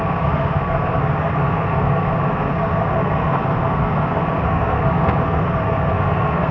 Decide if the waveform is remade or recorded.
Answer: remade